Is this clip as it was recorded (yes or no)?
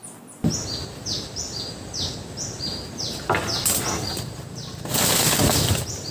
yes